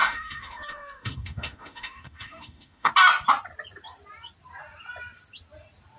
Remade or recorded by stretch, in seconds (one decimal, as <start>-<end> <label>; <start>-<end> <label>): 0.0-2.9 remade; 2.9-6.0 recorded